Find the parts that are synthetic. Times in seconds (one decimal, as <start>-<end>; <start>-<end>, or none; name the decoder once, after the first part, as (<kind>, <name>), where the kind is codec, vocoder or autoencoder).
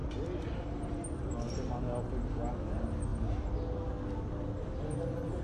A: 0.0-0.8 (vocoder, BigVGAN v2)